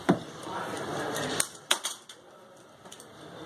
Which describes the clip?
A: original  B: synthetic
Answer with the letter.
B